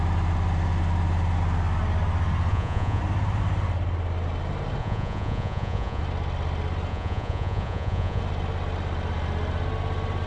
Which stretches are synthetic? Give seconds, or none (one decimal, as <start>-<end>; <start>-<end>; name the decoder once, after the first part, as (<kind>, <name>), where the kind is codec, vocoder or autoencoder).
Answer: 2.5-3.0 (vocoder, Vocos); 4.8-6.0; 6.9-8.2